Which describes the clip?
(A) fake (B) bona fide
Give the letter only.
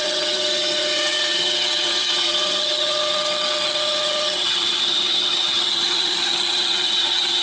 A